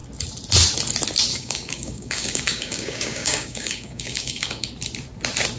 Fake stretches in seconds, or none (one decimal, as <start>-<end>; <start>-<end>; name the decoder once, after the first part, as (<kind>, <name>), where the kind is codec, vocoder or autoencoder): 1.3-4.7 (codec, DAC)